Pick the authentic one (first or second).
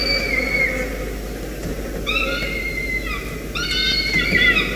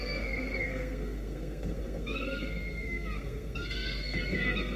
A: first